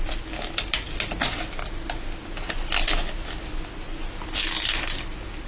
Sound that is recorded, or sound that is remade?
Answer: recorded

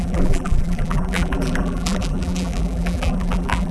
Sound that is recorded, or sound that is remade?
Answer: remade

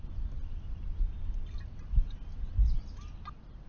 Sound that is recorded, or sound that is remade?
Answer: recorded